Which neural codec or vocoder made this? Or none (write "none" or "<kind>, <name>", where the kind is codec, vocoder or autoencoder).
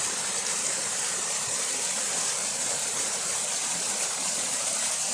vocoder, BigVGAN v2